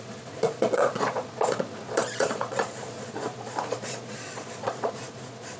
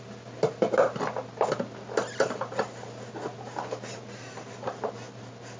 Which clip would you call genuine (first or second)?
second